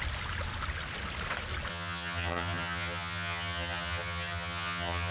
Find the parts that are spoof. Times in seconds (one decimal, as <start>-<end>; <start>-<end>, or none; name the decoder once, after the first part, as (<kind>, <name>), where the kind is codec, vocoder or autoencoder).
1.7-5.1 (vocoder, HiFi-GAN)